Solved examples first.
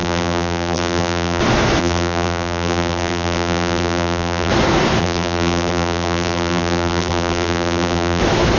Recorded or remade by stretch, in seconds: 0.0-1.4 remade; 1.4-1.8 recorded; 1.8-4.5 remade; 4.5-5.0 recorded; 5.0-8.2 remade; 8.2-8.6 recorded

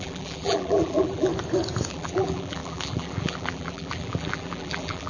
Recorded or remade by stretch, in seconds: 0.0-1.3 remade; 1.3-1.9 recorded; 1.9-5.1 remade

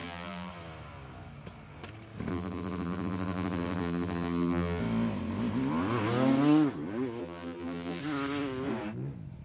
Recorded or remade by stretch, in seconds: 0.0-0.5 remade; 0.5-2.3 recorded; 2.3-4.8 remade; 4.8-7.2 recorded; 7.2-8.0 remade; 8.0-9.4 recorded

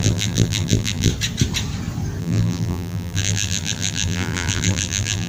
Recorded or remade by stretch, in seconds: 0.0-1.1 remade; 1.1-2.2 recorded; 2.2-5.3 remade

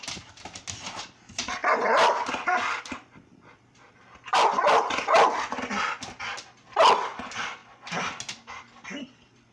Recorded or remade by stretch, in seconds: 0.0-1.6 recorded; 1.6-4.8 remade; 4.8-9.5 recorded